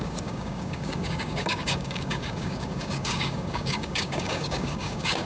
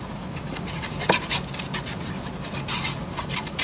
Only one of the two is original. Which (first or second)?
second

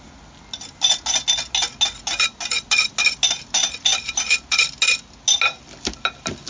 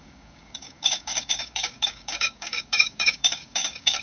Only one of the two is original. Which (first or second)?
first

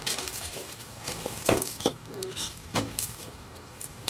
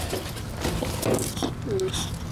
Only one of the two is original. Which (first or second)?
second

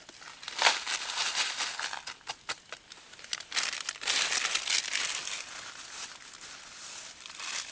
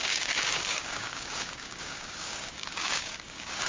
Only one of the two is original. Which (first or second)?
first